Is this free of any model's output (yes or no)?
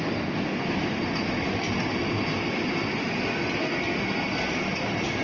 yes